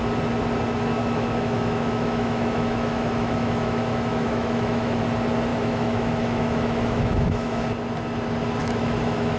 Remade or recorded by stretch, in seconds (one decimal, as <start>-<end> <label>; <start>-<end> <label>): 0.0-1.0 recorded; 1.0-5.0 remade; 5.0-5.5 recorded; 5.5-7.6 remade; 7.6-8.6 recorded; 8.6-9.4 remade